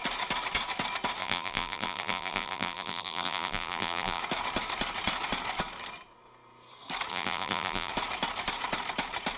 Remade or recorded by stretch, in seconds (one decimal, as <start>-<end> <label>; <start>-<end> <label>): 0.0-1.2 recorded; 1.2-4.2 remade; 4.2-7.1 recorded; 7.1-7.9 remade; 7.9-9.4 recorded